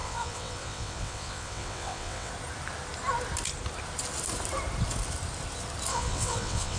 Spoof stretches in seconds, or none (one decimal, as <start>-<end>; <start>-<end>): 0.0-2.3; 5.9-6.8